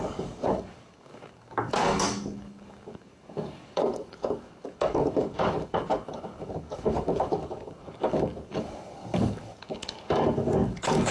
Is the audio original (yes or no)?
no